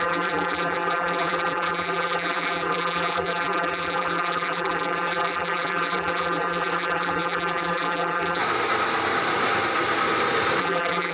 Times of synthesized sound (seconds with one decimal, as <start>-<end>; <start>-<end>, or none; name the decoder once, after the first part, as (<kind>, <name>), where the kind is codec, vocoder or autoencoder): 0.0-8.4 (vocoder, BigVGAN v2); 10.6-11.1